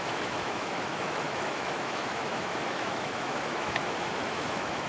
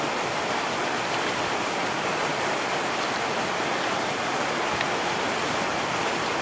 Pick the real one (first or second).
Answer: second